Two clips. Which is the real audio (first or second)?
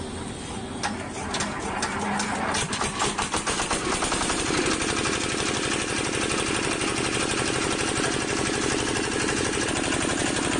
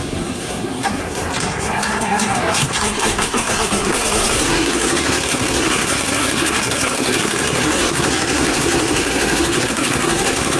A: first